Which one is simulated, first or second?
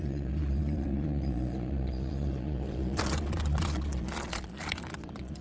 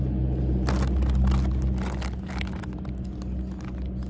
first